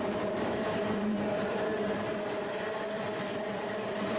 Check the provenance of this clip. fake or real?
fake